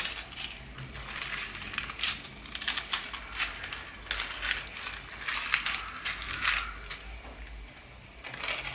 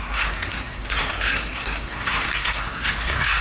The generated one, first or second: second